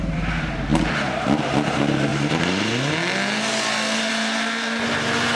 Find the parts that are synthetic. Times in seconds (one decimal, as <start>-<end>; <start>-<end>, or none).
0.0-2.1; 4.1-5.4